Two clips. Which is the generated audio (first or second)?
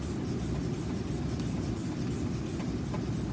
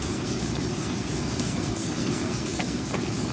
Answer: second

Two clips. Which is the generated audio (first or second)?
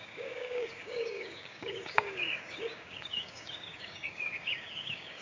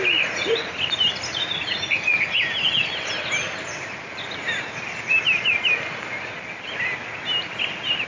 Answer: first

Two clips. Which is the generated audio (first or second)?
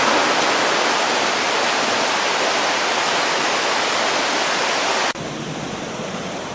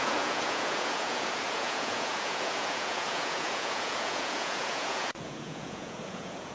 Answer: second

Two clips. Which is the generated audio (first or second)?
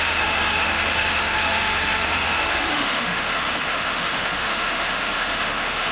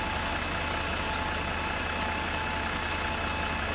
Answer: first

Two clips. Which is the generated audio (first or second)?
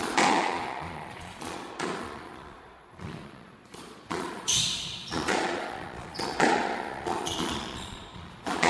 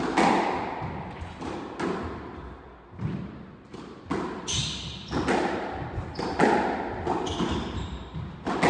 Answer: first